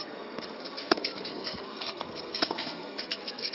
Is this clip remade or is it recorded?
remade